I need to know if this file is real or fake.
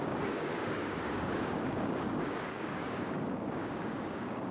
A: fake